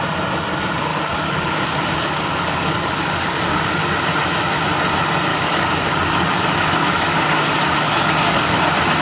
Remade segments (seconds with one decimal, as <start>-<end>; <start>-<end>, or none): 0.9-3.8; 5.3-8.6